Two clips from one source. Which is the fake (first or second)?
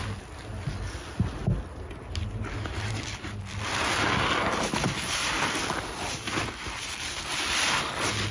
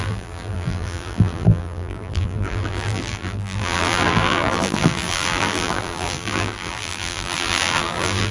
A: second